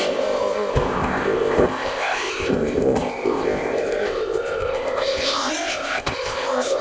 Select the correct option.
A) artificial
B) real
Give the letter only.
A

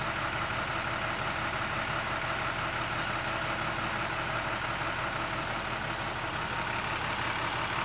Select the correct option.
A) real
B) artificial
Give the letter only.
A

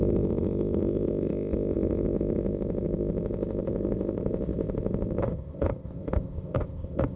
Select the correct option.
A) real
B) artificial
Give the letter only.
B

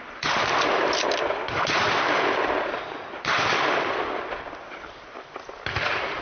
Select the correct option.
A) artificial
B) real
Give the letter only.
B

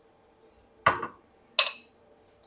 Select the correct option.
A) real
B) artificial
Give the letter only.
A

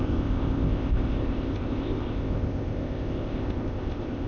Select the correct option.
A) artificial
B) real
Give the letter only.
A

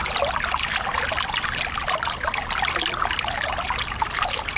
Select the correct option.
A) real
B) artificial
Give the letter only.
A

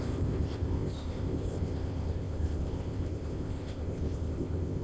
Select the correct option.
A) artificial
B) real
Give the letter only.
A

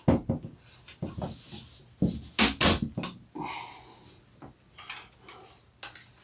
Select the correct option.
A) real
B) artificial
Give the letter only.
A